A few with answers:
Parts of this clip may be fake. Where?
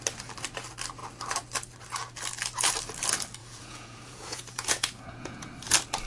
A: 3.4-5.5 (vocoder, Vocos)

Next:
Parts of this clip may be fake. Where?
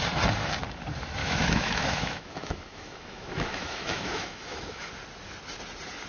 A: 1.2-4.9 (autoencoder, DAC-VAE)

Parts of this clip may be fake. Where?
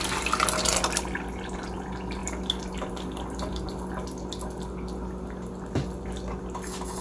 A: none